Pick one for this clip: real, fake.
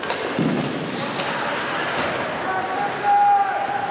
real